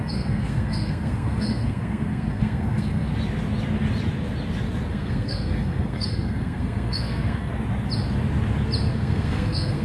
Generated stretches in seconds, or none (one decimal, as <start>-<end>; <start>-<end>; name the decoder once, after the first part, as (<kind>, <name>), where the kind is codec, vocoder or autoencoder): 0.0-3.1 (codec, SNAC); 4.9-7.5; 8.9-9.8